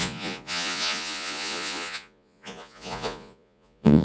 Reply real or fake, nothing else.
fake